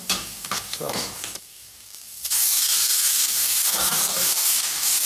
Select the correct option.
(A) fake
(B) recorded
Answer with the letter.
A